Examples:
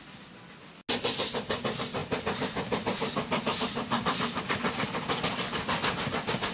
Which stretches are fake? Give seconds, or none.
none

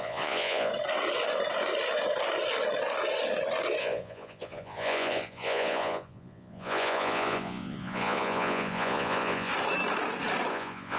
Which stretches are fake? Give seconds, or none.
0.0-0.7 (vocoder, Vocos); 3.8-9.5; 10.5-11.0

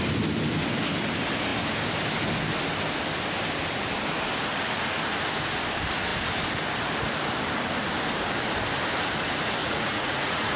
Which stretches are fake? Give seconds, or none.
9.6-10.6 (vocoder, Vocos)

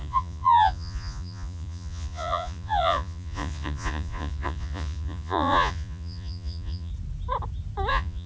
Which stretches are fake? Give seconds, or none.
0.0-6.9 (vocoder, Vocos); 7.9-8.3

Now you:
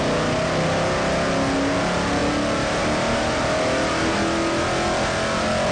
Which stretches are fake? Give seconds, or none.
none

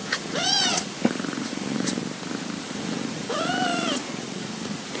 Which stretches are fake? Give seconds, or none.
0.0-2.0 (vocoder, Vocos); 2.6-5.0